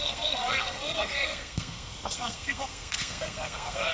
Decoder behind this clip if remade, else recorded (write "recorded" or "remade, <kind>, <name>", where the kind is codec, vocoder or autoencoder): remade, codec, SNAC